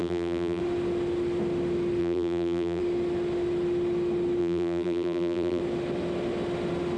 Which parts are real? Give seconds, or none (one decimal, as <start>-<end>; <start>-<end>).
0.6-2.0; 2.8-4.4; 5.6-7.0